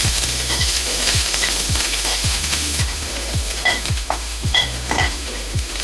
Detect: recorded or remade remade